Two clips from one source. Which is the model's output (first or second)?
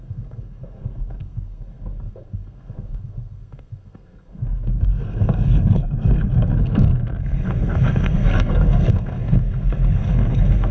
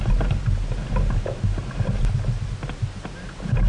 first